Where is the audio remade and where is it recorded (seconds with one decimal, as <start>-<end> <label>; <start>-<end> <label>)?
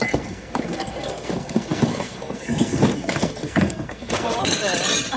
0.0-4.6 remade; 4.6-5.2 recorded